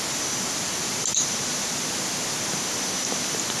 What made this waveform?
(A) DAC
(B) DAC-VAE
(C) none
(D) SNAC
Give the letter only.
C